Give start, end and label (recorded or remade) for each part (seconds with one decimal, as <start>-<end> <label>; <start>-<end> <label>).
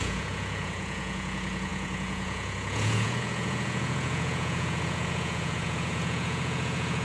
0.0-7.0 remade